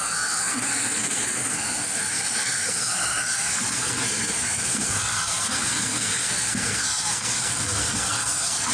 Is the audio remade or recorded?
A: remade